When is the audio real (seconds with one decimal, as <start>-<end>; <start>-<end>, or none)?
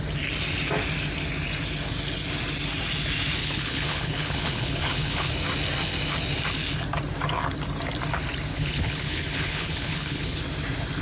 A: 0.0-3.4; 5.3-8.5; 10.4-11.0